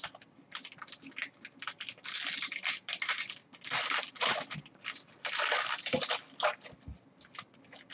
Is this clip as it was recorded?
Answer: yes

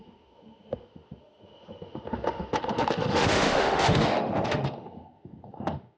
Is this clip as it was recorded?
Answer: no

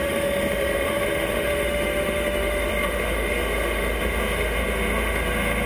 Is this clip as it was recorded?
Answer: no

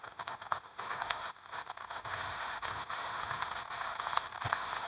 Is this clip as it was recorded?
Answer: no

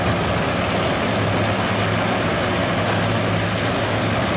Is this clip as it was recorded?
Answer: yes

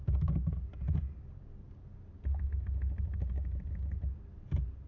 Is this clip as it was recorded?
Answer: yes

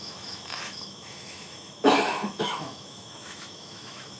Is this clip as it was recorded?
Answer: no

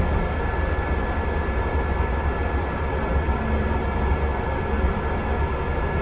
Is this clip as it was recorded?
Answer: yes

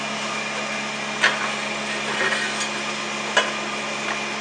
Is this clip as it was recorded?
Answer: yes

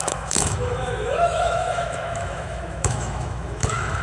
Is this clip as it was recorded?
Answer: no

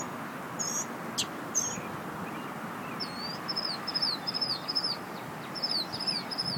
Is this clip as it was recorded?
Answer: yes